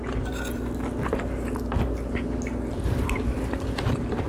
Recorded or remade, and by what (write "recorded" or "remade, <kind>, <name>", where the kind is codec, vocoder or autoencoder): recorded